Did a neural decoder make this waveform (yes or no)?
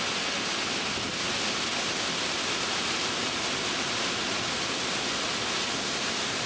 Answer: no